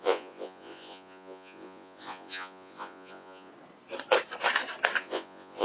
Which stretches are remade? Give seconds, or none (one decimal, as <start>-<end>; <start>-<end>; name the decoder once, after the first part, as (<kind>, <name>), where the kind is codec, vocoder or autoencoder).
0.0-3.5 (vocoder, Vocos); 5.0-5.6